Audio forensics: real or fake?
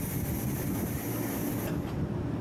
real